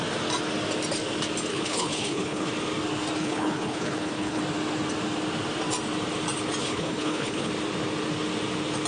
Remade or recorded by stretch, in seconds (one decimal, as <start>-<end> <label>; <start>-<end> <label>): 0.0-1.5 recorded; 1.5-2.5 remade; 2.5-3.2 recorded; 3.2-4.4 remade; 4.4-6.6 recorded; 6.6-7.5 remade; 7.5-8.9 recorded